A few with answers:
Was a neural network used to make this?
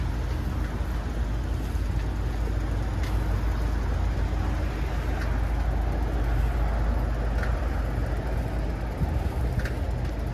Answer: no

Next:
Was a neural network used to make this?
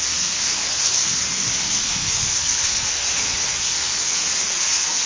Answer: yes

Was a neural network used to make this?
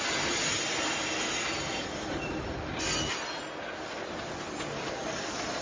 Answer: no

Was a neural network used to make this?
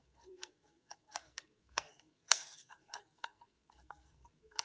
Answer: yes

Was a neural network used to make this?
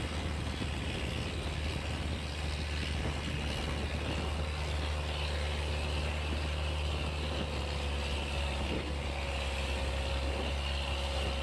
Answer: no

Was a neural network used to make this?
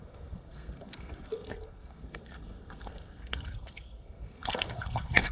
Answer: yes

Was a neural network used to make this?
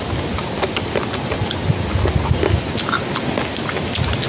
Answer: no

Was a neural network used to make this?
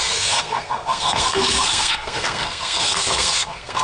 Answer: yes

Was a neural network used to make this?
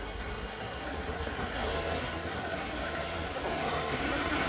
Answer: yes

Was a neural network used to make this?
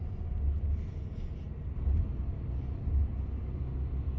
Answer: no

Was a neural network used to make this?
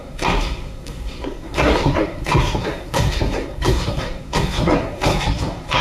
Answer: yes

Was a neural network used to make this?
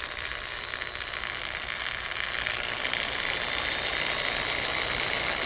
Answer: no